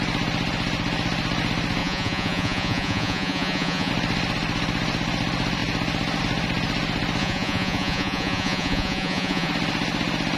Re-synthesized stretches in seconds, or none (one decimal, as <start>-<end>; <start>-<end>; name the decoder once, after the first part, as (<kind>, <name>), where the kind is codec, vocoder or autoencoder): 1.8-3.9 (vocoder, Vocos); 7.2-9.5